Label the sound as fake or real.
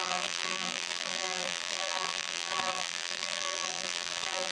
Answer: fake